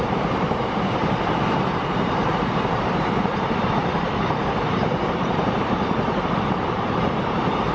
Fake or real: fake